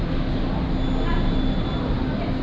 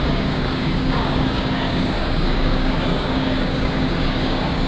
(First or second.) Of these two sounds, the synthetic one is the second